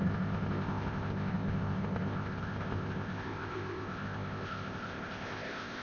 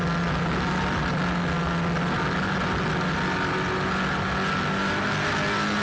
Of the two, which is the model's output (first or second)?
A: first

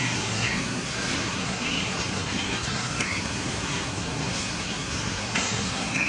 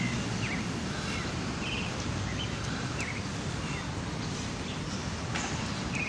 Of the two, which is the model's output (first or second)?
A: first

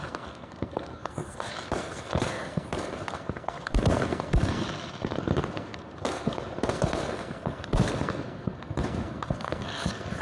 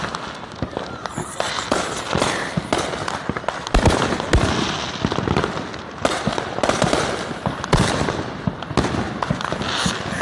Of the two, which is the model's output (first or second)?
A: first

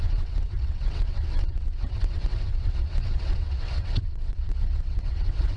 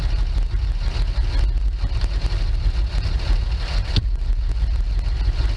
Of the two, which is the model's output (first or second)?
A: first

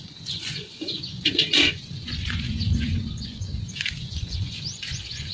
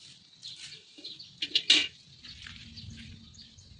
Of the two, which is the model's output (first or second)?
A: first